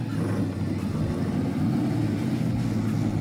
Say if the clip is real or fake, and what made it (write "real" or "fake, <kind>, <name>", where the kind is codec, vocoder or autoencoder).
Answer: real